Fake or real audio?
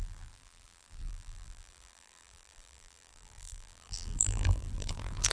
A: fake